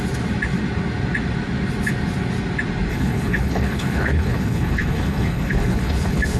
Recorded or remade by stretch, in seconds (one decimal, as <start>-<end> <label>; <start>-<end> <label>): 0.0-2.9 recorded; 2.9-6.4 remade